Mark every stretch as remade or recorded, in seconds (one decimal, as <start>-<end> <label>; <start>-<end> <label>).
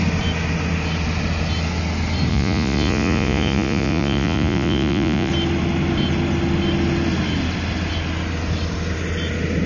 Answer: 0.0-2.3 recorded; 2.3-5.3 remade; 5.3-9.7 recorded